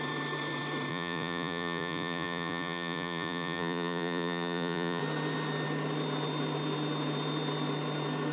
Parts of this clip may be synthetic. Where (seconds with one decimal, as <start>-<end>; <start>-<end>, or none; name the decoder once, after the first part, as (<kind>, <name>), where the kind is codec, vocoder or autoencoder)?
0.9-5.0 (vocoder, Vocos)